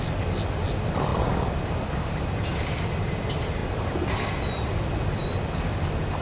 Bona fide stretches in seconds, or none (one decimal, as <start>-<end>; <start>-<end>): 0.0-6.2